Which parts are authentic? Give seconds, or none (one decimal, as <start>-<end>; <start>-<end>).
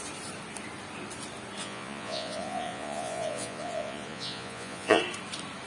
0.0-1.6; 5.0-5.7